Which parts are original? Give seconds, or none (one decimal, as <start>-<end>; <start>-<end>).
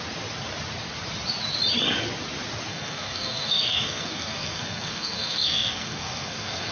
0.0-2.7